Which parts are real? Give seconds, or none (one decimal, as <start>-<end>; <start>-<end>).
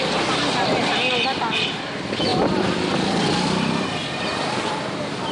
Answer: 0.0-5.3